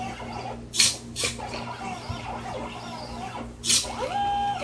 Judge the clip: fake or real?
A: real